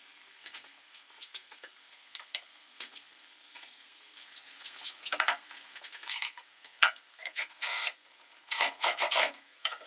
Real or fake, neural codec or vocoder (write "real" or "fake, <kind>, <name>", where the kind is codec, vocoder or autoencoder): fake, codec, SNAC